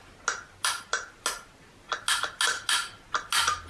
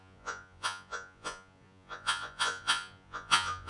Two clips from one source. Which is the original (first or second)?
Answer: first